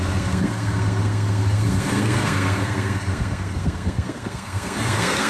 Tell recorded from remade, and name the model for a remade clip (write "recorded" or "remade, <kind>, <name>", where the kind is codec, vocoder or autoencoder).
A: remade, codec, SNAC